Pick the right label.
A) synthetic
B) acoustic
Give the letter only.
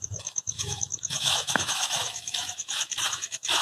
A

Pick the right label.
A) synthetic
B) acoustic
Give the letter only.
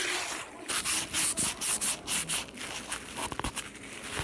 B